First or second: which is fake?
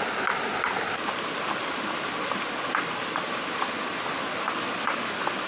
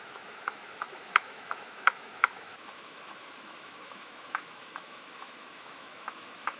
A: second